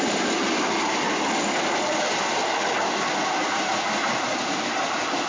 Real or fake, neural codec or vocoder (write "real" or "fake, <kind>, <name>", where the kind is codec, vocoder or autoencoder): real